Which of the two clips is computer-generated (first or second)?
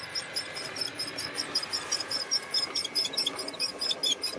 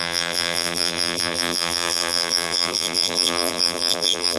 second